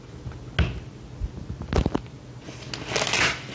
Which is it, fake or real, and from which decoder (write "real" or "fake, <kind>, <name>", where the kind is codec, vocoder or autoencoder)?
real